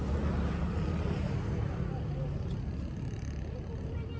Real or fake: real